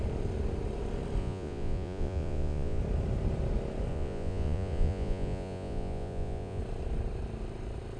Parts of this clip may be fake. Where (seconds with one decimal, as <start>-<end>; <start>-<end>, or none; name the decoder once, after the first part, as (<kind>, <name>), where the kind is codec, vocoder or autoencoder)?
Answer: 1.2-2.8 (vocoder, Vocos); 3.9-6.6